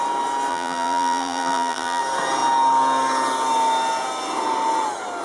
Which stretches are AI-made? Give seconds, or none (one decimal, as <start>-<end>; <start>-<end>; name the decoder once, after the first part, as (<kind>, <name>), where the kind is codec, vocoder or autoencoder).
0.5-2.0 (vocoder, BigVGAN v2)